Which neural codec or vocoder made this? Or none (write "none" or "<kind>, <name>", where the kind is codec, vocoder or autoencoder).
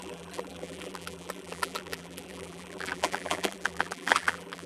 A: vocoder, BigVGAN v2